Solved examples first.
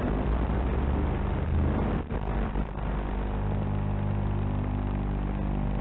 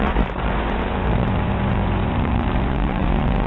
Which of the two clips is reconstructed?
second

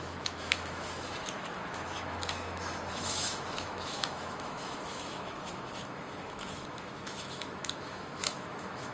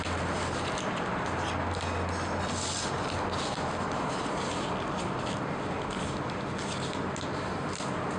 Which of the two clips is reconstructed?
first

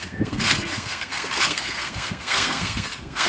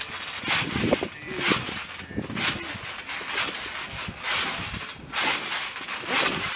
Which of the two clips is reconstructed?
first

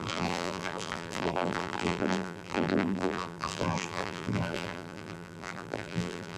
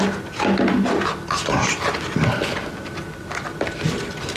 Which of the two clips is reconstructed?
first